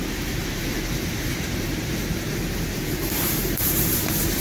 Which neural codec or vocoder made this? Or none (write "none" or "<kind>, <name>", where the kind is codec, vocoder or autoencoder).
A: vocoder, BigVGAN v2